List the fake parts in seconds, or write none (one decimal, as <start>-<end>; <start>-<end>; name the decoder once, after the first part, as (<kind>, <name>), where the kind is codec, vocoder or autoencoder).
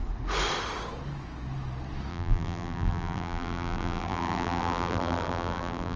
2.1-6.0 (vocoder, BigVGAN v2)